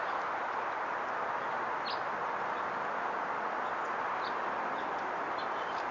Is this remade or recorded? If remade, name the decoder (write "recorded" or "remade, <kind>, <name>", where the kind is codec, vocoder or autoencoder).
recorded